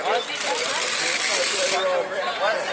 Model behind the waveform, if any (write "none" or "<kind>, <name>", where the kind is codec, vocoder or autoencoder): none